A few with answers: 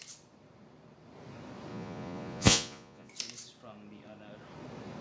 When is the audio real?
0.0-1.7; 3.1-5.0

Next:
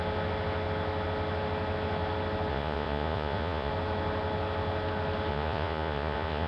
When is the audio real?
0.0-2.5; 3.7-5.3

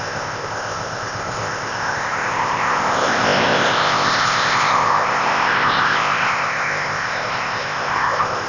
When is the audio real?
none

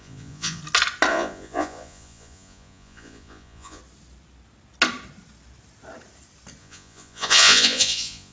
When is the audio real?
0.6-1.1; 3.8-6.6

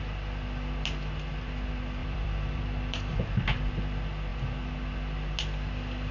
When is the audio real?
0.0-2.0; 3.2-6.1

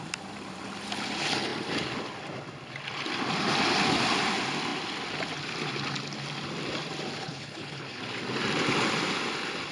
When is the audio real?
0.0-7.2; 8.0-9.7